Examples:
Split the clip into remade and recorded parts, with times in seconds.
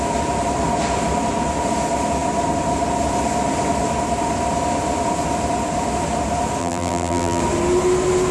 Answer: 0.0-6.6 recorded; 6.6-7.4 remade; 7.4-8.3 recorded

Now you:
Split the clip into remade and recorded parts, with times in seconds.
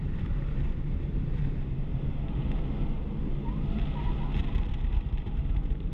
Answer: 0.0-1.4 remade; 1.4-4.7 recorded; 4.7-5.9 remade